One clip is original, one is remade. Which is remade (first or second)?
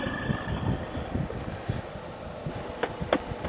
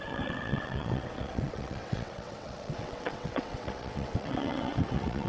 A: second